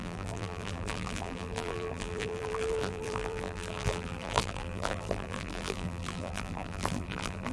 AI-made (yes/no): yes